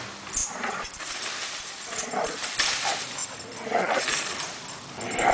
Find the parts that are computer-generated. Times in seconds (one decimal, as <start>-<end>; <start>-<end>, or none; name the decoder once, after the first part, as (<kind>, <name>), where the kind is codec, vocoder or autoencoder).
0.4-2.1 (vocoder, BigVGAN v2)